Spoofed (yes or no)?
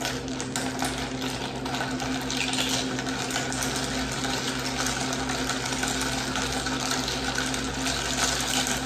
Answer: no